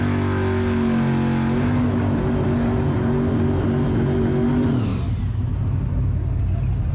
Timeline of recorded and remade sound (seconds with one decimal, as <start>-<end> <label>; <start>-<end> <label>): 0.0-6.9 recorded